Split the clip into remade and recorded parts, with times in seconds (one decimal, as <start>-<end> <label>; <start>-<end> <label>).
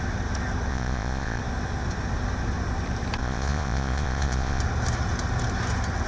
0.0-0.7 recorded; 0.7-1.4 remade; 1.4-3.2 recorded; 3.2-4.6 remade; 4.6-6.1 recorded